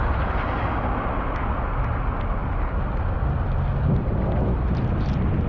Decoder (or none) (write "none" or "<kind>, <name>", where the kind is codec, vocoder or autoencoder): none